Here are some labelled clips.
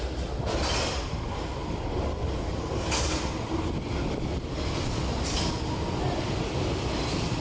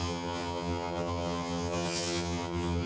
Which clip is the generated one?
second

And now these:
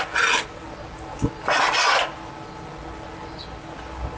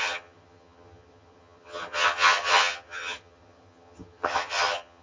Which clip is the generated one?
second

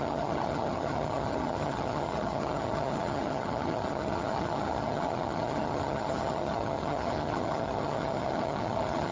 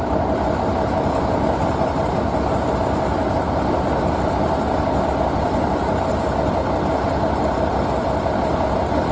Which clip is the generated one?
first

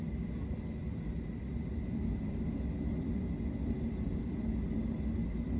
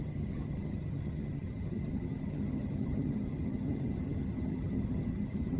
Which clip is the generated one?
second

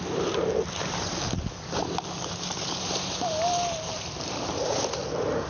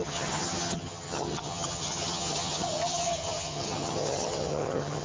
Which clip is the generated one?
second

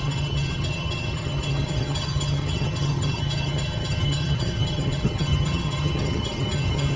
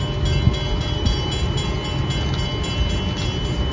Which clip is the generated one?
first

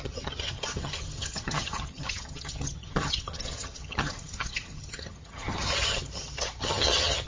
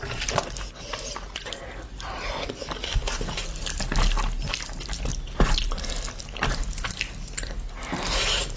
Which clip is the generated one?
first